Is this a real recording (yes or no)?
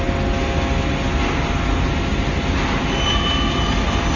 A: yes